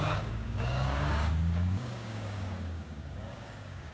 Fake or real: fake